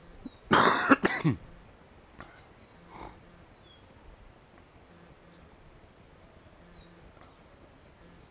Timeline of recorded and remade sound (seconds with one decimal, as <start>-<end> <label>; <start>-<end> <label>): 0.0-8.3 recorded